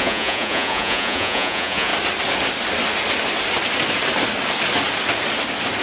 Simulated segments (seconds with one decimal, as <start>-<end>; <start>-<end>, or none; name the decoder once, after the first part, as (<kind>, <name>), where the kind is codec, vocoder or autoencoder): 0.0-1.9 (vocoder, Vocos)